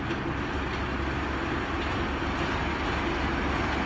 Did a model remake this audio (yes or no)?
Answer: no